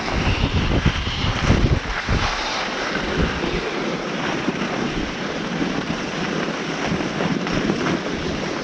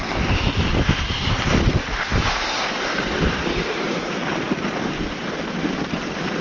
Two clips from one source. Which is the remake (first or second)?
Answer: second